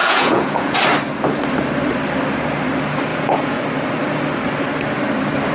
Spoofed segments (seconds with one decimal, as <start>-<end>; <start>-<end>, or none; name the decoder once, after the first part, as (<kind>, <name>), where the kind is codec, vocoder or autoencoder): 0.0-0.8 (vocoder, Vocos); 3.1-3.6